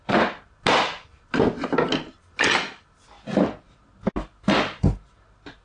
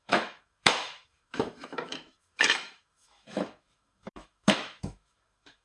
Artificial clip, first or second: second